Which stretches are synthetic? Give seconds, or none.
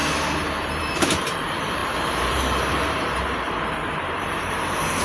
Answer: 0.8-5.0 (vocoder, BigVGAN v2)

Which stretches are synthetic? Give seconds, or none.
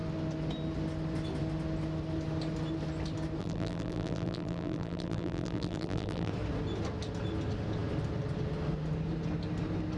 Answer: 3.4-6.3 (vocoder, BigVGAN v2)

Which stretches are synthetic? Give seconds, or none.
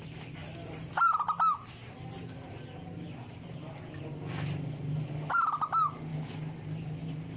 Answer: none